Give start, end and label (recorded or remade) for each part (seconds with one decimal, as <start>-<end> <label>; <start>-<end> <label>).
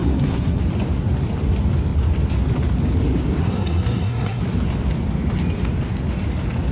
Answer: 0.0-0.6 remade; 0.6-3.4 recorded; 3.4-4.4 remade; 4.4-6.7 recorded